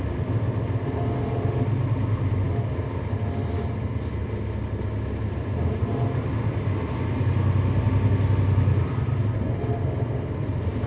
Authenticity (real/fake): real